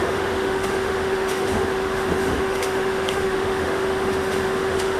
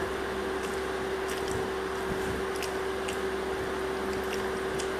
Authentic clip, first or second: second